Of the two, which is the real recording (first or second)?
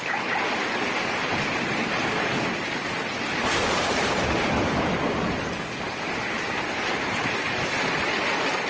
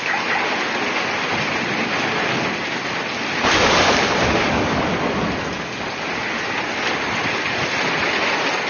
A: second